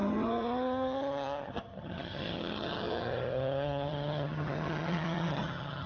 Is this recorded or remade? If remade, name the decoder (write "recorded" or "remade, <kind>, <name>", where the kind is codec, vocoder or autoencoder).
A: remade, vocoder, HiFi-GAN